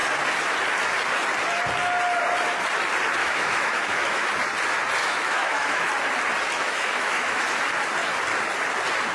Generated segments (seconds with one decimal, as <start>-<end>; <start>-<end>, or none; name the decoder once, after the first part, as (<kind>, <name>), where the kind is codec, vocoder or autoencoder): 3.2-4.3 (autoencoder, DAC-VAE); 5.0-5.9; 6.6-7.6